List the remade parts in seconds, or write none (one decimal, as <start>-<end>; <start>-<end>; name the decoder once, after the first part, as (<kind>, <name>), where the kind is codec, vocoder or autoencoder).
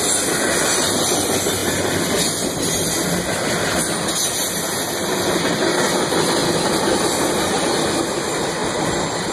8.6-9.3 (vocoder, BigVGAN v2)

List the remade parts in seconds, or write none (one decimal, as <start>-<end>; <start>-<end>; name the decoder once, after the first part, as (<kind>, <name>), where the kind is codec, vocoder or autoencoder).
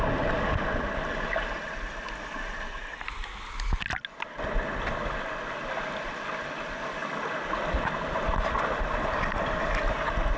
none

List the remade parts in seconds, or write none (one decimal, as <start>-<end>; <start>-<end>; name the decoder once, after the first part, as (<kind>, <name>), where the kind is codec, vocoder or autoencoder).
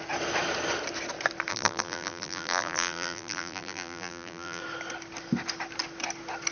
1.5-4.6 (vocoder, BigVGAN v2)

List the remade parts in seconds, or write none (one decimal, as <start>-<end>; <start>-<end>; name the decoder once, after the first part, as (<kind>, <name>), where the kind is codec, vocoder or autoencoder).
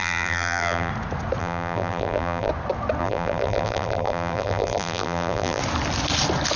0.0-0.9 (vocoder, BigVGAN v2); 1.4-2.5; 3.0-5.6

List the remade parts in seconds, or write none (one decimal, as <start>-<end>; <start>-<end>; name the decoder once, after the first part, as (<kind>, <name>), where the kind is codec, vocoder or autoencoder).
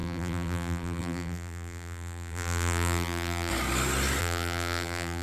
0.0-3.5 (vocoder, BigVGAN v2); 4.2-5.2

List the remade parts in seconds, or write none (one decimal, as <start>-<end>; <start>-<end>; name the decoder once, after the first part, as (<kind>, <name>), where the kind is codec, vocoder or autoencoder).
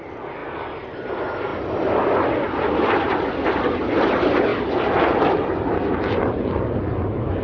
0.0-0.4 (vocoder, BigVGAN v2); 1.1-1.5; 3.3-4.5; 6.2-7.4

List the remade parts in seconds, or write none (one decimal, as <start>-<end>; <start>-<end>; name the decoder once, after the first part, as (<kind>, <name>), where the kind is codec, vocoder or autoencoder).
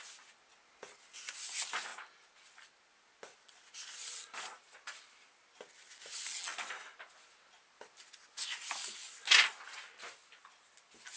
none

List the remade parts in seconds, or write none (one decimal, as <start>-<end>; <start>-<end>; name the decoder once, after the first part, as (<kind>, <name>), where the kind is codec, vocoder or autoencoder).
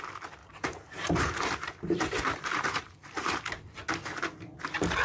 0.4-3.4 (vocoder, BigVGAN v2)